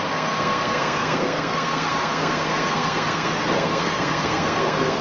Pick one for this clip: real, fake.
fake